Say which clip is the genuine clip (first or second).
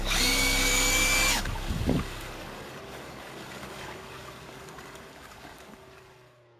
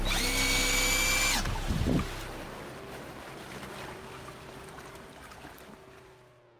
second